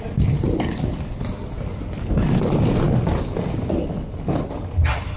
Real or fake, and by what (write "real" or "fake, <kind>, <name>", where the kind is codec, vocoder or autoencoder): real